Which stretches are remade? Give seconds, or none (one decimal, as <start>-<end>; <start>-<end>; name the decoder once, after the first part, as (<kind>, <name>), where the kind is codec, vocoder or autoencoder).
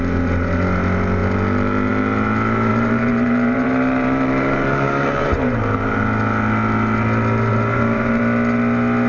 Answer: 2.7-6.0 (vocoder, BigVGAN v2); 7.5-8.2